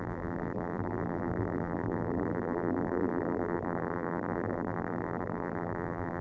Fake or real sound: fake